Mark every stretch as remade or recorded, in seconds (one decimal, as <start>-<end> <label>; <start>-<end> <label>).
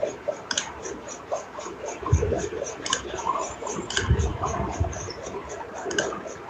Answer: 0.0-3.9 remade; 3.9-4.3 recorded; 4.3-5.2 remade; 5.2-6.5 recorded